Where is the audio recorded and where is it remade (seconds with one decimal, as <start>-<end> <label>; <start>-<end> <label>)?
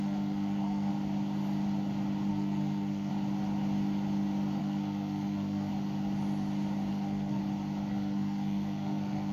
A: 0.0-0.9 remade; 0.9-2.3 recorded; 2.3-3.1 remade; 3.1-4.6 recorded; 4.6-5.7 remade; 5.7-6.9 recorded; 6.9-7.4 remade; 7.4-7.9 recorded; 7.9-9.3 remade